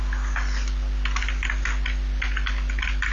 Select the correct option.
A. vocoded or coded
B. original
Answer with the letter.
B